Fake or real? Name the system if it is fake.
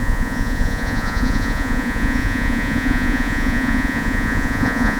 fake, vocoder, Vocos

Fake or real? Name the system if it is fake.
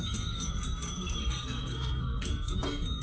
fake, codec, SNAC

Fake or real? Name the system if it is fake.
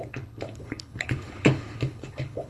fake, codec, HILCodec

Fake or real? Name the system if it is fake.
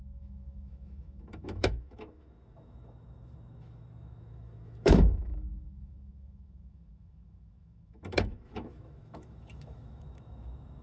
fake, autoencoder, DAC-VAE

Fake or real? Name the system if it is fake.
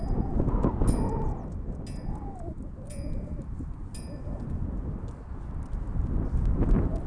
real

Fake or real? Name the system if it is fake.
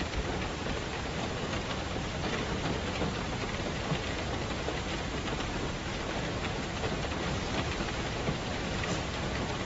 fake, vocoder, BigVGAN v2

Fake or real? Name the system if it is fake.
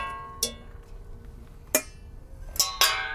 real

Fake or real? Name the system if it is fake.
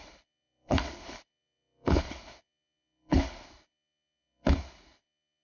fake, codec, HILCodec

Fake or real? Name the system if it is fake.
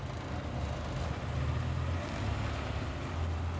real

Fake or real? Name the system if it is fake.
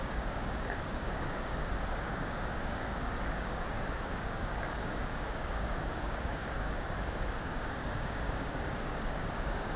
fake, codec, DAC